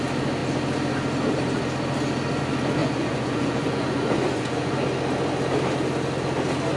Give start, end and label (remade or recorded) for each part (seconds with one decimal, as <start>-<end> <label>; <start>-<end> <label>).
0.0-2.8 recorded; 2.8-4.8 remade; 4.8-6.8 recorded